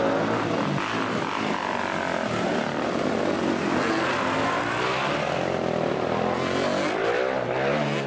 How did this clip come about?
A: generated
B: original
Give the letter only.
B